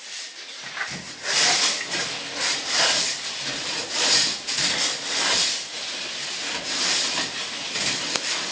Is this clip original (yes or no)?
yes